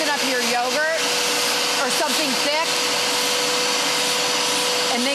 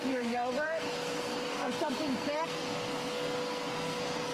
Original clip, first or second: first